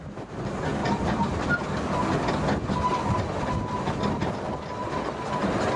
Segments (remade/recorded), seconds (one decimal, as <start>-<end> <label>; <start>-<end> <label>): 0.0-5.8 recorded